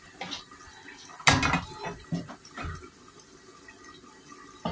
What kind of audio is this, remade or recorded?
recorded